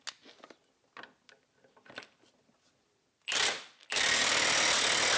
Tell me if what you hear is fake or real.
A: real